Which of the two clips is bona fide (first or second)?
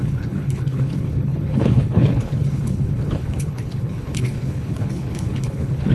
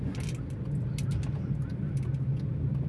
second